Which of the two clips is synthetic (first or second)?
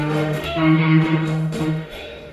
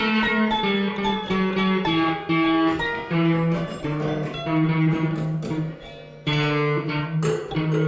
first